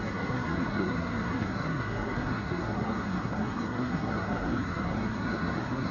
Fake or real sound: fake